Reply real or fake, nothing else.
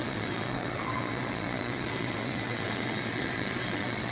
fake